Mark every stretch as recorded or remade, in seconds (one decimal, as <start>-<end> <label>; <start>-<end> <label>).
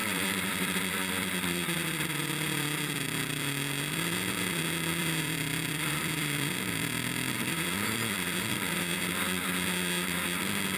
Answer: 0.0-4.6 remade; 4.6-5.0 recorded; 5.0-9.1 remade; 9.1-10.8 recorded